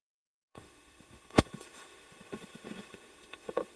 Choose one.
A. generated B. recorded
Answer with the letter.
A